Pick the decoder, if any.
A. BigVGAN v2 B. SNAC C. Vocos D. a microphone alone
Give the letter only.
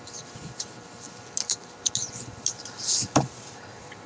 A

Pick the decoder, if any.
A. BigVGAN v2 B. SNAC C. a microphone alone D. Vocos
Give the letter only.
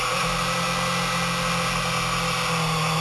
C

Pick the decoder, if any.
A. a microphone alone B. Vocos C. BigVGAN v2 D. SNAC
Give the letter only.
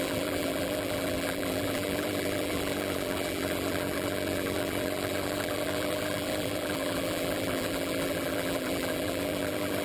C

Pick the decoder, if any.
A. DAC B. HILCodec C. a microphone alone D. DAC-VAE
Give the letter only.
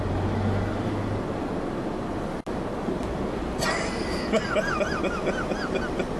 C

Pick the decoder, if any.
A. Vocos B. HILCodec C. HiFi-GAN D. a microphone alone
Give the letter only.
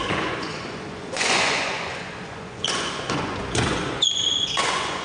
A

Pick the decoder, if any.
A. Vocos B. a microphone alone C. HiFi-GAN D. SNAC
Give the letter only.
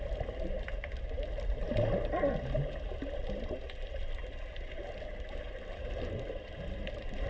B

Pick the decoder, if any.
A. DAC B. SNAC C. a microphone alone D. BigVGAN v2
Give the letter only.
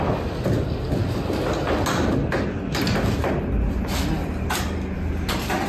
C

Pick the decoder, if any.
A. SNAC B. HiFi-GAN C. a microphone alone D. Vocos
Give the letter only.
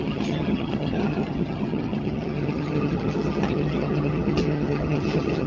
B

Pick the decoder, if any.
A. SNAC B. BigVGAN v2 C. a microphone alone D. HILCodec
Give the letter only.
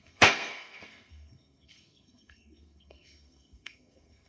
A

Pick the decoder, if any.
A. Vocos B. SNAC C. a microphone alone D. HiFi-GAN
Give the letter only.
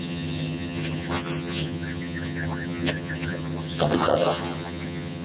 D